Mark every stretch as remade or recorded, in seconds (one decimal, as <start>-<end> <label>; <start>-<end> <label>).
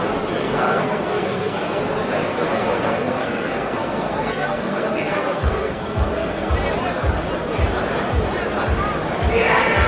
0.0-0.4 recorded; 0.4-1.8 remade; 1.8-2.3 recorded; 2.3-6.5 remade; 6.5-9.9 recorded